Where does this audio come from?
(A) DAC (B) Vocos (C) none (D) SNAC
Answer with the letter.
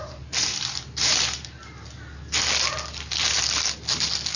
C